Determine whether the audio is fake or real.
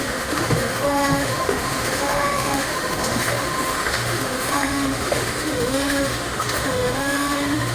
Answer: fake